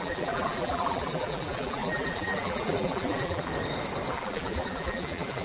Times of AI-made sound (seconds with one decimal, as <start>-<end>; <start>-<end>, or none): 0.0-3.5; 4.1-5.4

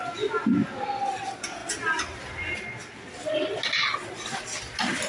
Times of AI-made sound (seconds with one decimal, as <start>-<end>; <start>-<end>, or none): none

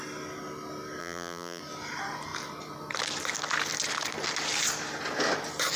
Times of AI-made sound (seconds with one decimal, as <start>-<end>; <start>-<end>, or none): 1.0-1.6

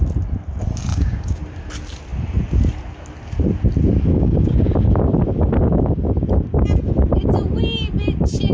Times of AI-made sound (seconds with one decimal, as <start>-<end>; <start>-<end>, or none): 0.9-1.4; 4.1-4.7

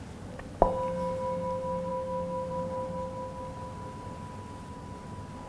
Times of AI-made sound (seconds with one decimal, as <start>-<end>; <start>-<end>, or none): 1.9-2.5